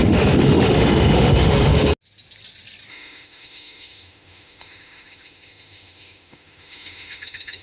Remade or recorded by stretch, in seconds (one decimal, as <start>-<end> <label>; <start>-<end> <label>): 0.0-1.7 remade; 1.7-2.9 recorded; 2.9-7.6 remade